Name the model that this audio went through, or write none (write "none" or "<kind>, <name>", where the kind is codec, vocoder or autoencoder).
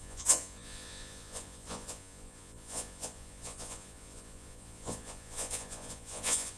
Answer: vocoder, Vocos